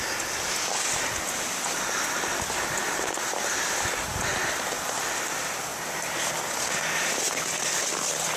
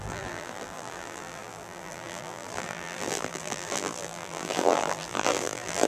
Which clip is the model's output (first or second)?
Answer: second